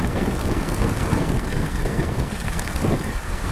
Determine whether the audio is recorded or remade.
remade